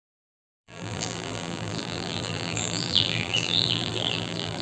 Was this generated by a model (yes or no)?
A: yes